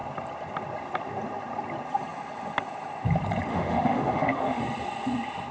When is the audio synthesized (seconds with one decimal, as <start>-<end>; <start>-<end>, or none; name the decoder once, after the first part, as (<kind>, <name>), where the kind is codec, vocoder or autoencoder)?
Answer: 3.5-4.6 (autoencoder, DAC-VAE)